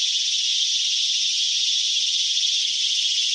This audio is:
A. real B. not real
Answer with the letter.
A